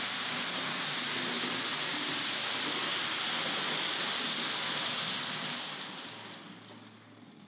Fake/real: real